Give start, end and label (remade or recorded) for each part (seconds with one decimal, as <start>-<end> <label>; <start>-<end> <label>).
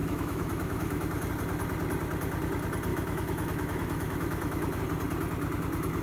0.0-1.3 remade; 1.3-2.9 recorded; 2.9-4.8 remade; 4.8-6.0 recorded